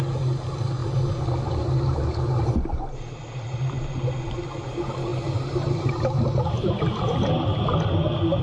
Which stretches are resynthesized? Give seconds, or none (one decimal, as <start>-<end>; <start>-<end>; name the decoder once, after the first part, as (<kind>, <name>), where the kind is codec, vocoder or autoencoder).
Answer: none